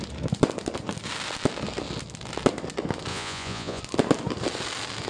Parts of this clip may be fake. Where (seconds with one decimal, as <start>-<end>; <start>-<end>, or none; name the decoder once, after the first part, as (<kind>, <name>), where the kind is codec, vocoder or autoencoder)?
3.1-3.8 (vocoder, Vocos)